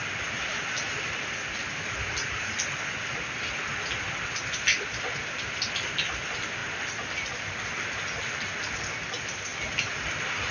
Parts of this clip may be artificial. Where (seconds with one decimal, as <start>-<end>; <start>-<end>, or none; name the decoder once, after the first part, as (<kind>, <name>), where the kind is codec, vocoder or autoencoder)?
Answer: none